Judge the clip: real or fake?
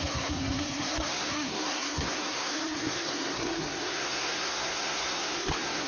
fake